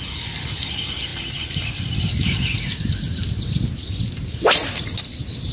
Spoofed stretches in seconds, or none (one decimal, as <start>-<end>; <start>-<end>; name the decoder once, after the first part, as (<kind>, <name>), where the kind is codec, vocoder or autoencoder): none